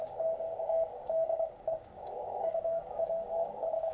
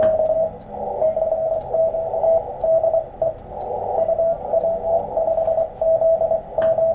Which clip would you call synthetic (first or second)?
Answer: first